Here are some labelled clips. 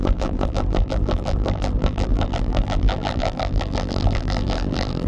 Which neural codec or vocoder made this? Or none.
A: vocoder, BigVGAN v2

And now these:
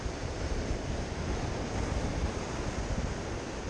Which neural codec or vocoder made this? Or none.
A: none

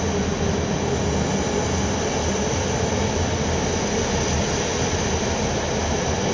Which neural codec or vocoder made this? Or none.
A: none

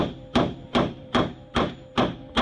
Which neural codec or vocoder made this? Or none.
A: vocoder, BigVGAN v2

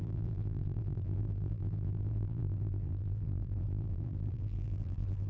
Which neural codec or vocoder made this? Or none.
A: vocoder, BigVGAN v2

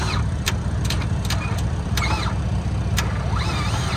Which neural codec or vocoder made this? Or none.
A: vocoder, BigVGAN v2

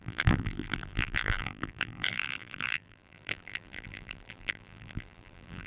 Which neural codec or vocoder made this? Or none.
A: vocoder, BigVGAN v2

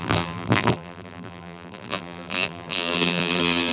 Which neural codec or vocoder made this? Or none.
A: vocoder, BigVGAN v2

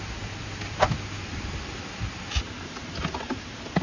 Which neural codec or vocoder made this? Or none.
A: none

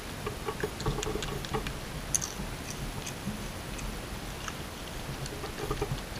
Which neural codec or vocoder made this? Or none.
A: none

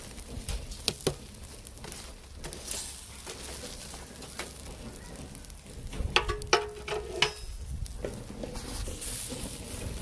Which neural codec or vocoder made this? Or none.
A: none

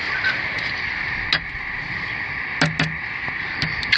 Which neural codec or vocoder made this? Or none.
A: none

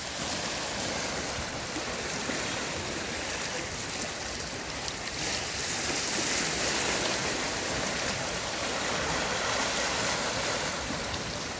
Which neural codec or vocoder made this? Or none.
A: vocoder, BigVGAN v2